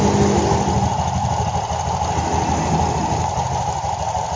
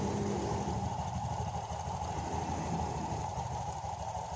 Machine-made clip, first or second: second